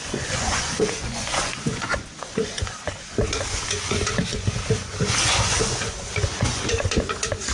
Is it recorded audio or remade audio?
remade